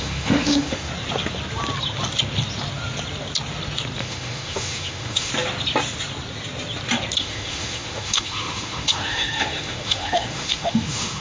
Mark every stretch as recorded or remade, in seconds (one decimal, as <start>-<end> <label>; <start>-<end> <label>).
0.0-0.9 remade; 0.9-4.0 recorded; 4.0-5.3 remade; 5.3-7.2 recorded; 7.2-11.2 remade